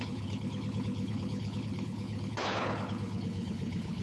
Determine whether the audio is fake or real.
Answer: fake